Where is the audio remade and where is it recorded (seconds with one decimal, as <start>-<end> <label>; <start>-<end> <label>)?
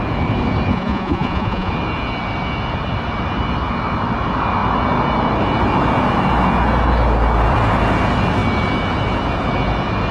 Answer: 0.0-0.7 recorded; 0.7-1.7 remade; 1.7-10.1 recorded